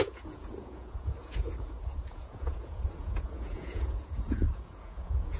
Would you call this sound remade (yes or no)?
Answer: yes